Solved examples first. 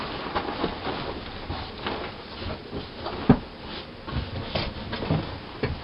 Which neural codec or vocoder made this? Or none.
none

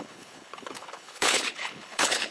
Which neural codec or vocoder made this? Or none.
codec, HILCodec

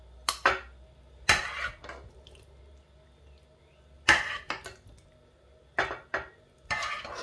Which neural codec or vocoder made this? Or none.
none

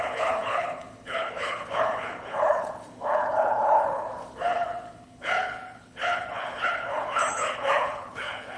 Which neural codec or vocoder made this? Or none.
codec, HILCodec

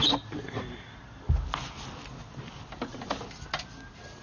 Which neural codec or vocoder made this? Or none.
none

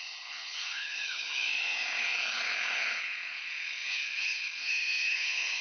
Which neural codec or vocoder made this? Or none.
codec, HILCodec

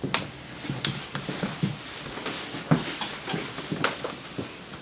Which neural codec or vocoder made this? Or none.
none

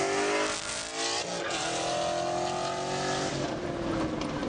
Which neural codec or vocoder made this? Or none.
none